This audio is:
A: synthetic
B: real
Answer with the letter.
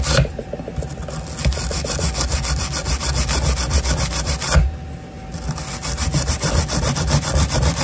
B